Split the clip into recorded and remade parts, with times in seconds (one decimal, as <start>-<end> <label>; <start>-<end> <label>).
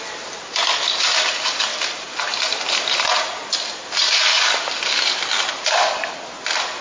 0.0-1.7 recorded; 1.7-3.5 remade; 3.5-6.8 recorded